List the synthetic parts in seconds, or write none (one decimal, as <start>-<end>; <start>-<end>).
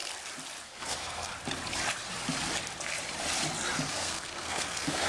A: 0.6-1.3; 3.9-5.1